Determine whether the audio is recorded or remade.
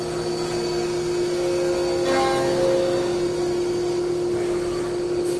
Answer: recorded